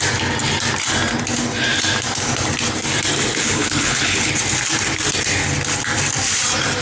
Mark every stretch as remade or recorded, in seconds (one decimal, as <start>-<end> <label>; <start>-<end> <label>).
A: 0.0-3.3 recorded; 3.3-4.3 remade; 4.3-6.8 recorded